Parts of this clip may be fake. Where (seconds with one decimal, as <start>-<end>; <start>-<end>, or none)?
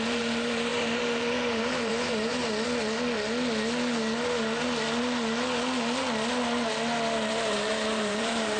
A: 0.0-2.3; 7.3-8.6